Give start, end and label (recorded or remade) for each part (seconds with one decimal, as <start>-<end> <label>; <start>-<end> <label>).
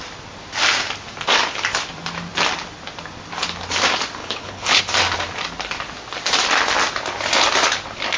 0.0-4.2 recorded; 4.2-4.8 remade; 4.8-8.2 recorded